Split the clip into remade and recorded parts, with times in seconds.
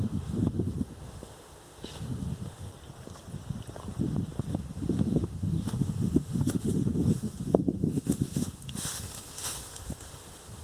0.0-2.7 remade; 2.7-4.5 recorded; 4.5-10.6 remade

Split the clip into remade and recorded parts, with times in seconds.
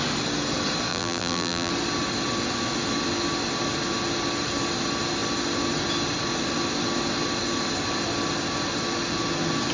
0.0-0.9 recorded; 0.9-1.7 remade; 1.7-9.7 recorded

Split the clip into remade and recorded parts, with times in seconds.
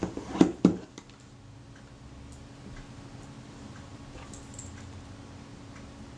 0.0-6.2 recorded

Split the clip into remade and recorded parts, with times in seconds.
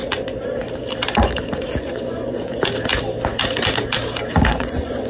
0.0-1.8 recorded; 1.8-2.5 remade; 2.5-4.5 recorded; 4.5-5.1 remade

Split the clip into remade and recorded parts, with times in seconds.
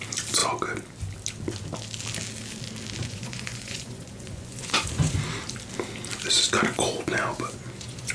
0.0-3.0 recorded; 3.0-5.2 remade; 5.2-6.7 recorded; 6.7-8.1 remade